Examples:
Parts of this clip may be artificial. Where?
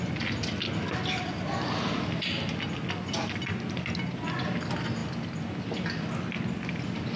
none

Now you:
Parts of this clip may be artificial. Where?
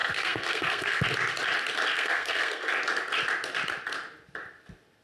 0.0-1.0 (codec, SNAC); 1.9-2.7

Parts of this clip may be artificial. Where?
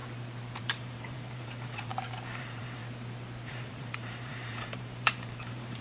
0.6-1.9 (vocoder, BigVGAN v2); 2.4-2.8; 3.5-5.8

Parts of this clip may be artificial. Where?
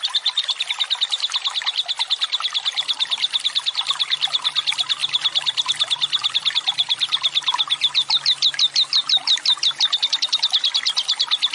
none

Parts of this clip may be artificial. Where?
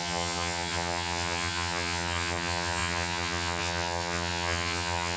0.0-5.2 (vocoder, HiFi-GAN)